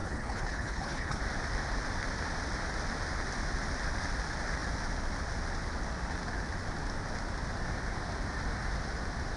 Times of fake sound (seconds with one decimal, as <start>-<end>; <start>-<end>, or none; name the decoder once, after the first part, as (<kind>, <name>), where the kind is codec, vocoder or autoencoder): 0.0-1.2 (codec, HILCodec)